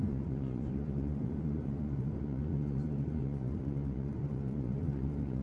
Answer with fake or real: fake